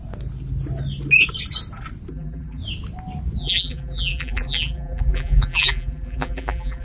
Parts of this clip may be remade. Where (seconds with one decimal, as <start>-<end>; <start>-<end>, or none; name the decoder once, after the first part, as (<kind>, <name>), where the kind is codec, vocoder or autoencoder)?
2.1-2.6 (vocoder, BigVGAN v2); 3.4-6.8